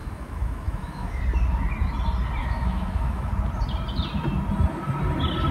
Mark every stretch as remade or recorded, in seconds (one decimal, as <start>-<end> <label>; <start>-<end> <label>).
0.0-1.2 remade; 1.2-2.4 recorded; 2.4-3.3 remade; 3.3-5.5 recorded